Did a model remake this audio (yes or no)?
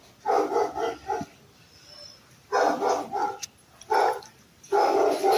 no